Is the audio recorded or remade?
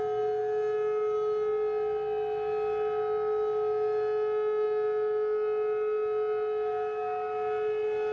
recorded